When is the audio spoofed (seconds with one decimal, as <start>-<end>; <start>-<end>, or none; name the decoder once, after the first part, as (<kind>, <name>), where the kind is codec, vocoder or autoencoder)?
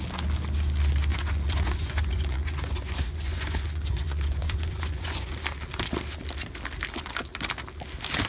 1.1-5.3 (vocoder, Vocos)